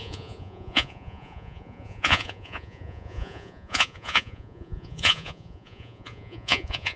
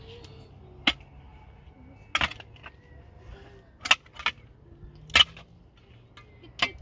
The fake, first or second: first